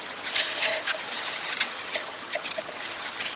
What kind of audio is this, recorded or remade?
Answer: remade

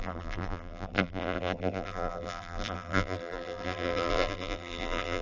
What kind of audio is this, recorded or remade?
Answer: remade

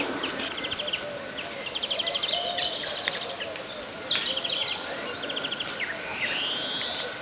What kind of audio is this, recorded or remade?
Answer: recorded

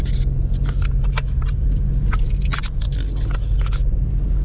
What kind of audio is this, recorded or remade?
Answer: recorded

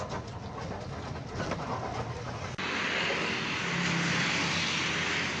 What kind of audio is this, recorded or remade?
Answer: recorded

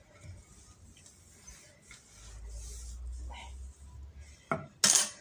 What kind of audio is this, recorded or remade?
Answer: recorded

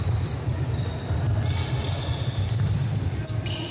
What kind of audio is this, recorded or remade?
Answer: recorded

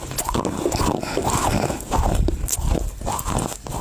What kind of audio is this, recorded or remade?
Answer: recorded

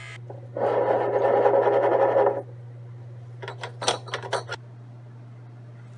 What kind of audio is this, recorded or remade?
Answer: recorded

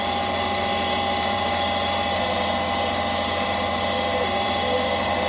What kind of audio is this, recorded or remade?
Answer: remade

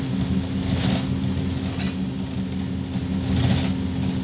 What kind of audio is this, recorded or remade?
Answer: recorded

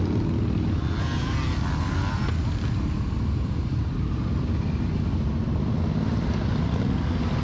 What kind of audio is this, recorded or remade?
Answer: recorded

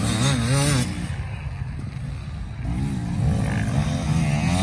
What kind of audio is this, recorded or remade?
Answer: recorded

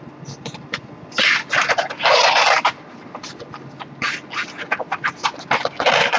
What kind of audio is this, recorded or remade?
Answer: recorded